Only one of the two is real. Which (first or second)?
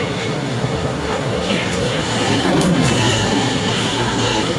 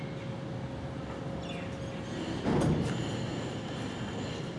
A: second